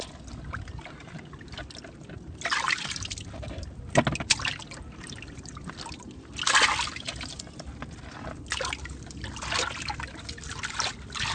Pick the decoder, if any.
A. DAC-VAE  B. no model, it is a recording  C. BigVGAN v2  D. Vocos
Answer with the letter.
B